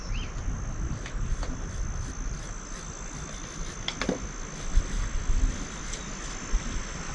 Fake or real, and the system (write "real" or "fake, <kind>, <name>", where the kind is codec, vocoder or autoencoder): real